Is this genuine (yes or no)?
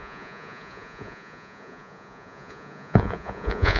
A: no